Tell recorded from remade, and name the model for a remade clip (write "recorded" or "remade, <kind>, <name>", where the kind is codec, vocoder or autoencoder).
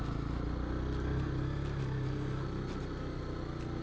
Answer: recorded